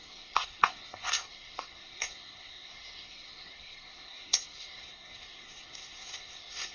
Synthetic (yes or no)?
yes